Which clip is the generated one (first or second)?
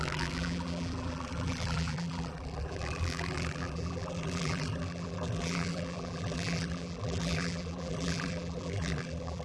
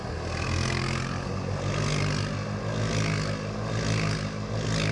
first